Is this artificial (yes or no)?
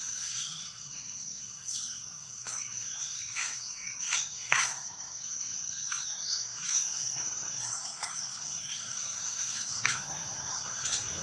yes